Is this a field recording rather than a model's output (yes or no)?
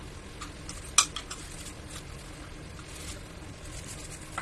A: yes